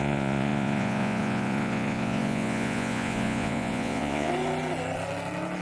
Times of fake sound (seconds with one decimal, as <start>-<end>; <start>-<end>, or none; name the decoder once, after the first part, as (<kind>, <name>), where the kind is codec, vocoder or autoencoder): 0.0-4.3 (vocoder, Vocos)